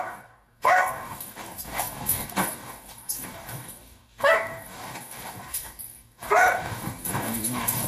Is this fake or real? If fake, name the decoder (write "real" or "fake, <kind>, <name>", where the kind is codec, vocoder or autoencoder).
fake, codec, DAC